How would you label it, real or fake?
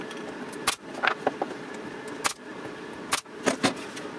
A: real